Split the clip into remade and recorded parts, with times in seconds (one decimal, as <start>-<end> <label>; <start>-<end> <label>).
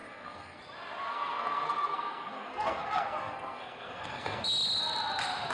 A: 0.0-0.6 remade; 0.6-1.1 recorded; 1.1-4.4 remade; 4.4-5.5 recorded